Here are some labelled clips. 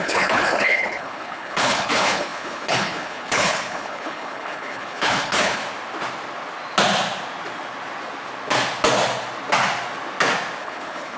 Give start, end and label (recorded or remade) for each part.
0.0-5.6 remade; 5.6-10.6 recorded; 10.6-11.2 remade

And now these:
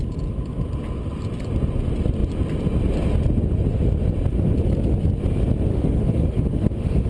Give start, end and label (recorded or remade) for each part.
0.0-5.7 recorded; 5.7-7.1 remade

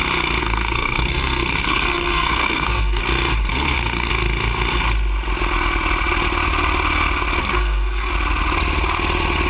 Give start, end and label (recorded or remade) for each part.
0.0-0.4 recorded; 0.4-3.0 remade; 3.0-3.5 recorded; 3.5-4.1 remade; 4.1-7.4 recorded; 7.4-8.1 remade; 8.1-9.5 recorded

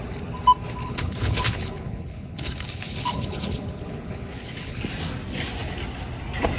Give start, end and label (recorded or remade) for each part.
0.0-0.8 recorded; 0.8-4.8 remade; 4.8-6.6 recorded

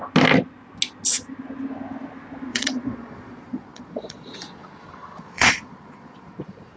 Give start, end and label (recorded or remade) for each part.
0.0-2.5 recorded; 2.5-6.8 remade